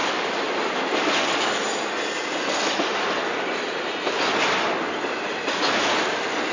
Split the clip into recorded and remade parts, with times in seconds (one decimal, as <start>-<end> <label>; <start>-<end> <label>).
0.0-0.8 remade; 0.8-6.5 recorded